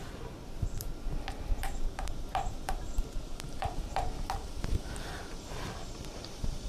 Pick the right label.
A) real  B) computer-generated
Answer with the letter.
B